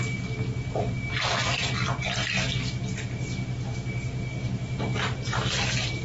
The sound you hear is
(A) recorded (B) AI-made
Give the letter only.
A